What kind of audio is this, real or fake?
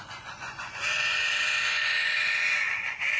fake